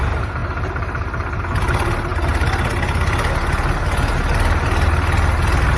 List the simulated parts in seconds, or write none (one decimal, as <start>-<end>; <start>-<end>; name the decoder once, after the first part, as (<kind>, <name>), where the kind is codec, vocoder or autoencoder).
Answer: none